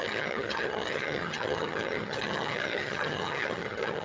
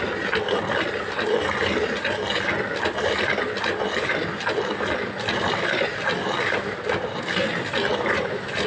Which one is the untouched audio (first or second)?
second